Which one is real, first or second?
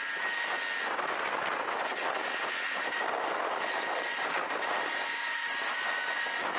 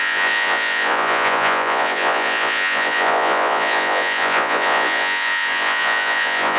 first